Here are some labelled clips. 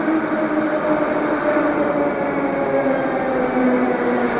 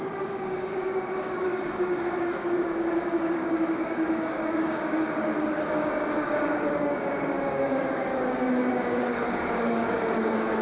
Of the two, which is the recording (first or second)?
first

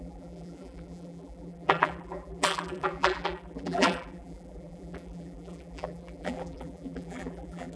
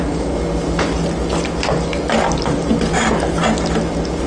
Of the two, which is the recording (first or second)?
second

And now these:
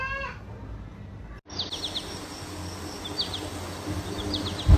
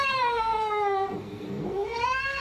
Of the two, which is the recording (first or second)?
first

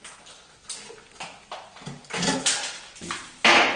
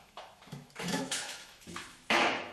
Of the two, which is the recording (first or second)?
first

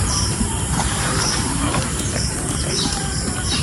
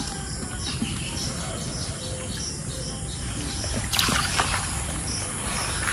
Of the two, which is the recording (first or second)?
second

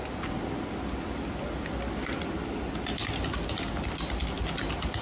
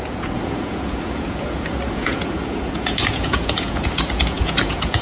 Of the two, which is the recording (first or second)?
first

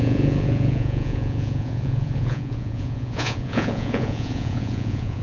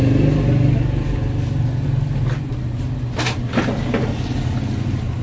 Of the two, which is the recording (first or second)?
second